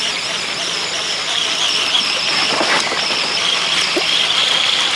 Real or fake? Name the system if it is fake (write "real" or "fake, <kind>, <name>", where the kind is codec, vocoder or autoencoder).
real